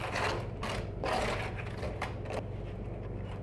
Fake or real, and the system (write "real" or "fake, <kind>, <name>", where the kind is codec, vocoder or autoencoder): real